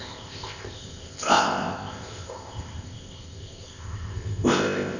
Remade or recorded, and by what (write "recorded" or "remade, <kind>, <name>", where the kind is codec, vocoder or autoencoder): remade, codec, ZipCodec